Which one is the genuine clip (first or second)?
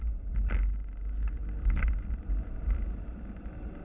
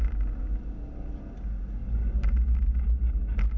second